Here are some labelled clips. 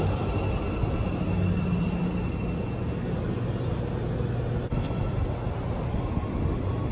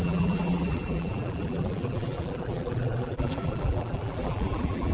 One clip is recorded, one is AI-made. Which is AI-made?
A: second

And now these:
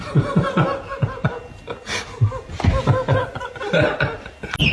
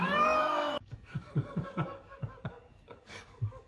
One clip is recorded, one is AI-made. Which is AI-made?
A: second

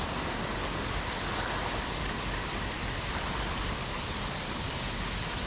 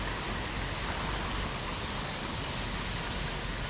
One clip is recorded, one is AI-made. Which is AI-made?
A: first